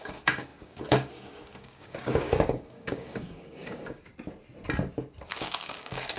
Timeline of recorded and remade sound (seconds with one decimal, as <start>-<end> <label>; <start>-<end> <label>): 0.0-4.1 remade; 4.1-5.3 recorded; 5.3-6.2 remade